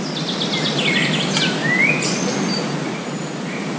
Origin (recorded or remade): recorded